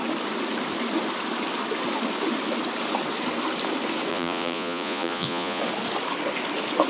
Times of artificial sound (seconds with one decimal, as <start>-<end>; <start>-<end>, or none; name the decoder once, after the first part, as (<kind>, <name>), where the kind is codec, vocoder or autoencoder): 4.1-5.6 (vocoder, Vocos)